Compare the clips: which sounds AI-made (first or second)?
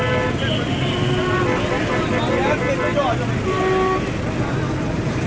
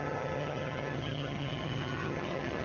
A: second